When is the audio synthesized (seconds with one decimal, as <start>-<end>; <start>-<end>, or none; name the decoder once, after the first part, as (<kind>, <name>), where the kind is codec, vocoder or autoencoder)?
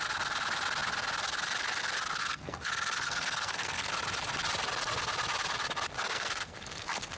2.2-3.9 (codec, SNAC); 6.0-7.2